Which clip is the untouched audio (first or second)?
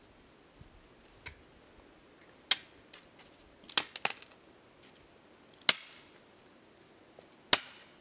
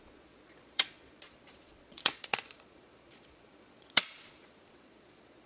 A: first